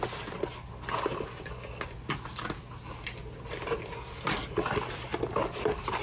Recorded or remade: recorded